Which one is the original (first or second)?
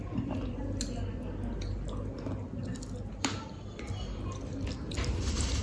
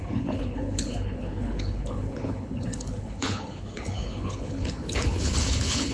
first